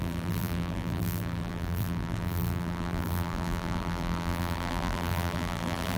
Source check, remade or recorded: remade